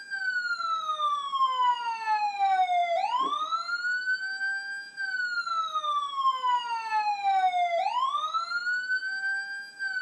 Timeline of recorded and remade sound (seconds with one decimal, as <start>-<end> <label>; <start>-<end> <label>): 0.0-10.0 recorded